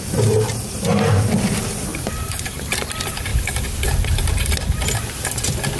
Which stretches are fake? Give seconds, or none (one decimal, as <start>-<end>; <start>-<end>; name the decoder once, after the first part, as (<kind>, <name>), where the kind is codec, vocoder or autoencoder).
1.9-2.8 (vocoder, BigVGAN v2)